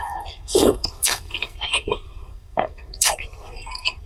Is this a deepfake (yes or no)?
yes